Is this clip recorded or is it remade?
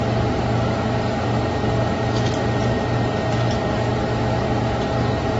recorded